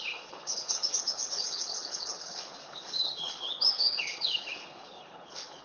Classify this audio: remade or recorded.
remade